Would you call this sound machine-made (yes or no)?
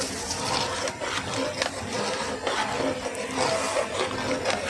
no